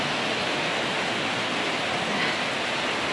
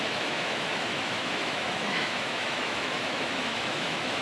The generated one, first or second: second